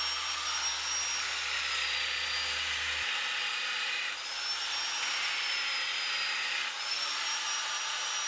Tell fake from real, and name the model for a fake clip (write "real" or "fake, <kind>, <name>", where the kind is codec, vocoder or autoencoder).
real